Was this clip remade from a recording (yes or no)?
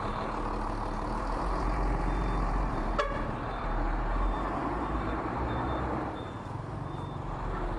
yes